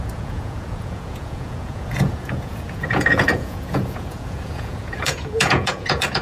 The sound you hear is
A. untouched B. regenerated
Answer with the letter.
B